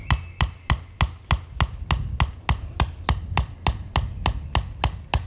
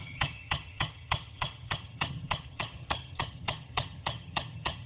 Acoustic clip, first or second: first